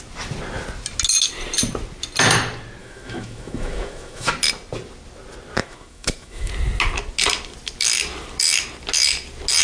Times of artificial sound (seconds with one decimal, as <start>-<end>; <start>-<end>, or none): 2.8-4.3; 5.6-6.5